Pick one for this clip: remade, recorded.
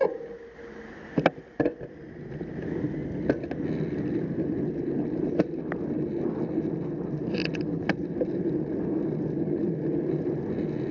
recorded